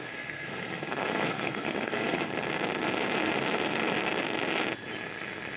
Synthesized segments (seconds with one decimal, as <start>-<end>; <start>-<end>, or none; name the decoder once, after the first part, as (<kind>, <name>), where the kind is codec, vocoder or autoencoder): 0.0-2.3 (codec, SNAC)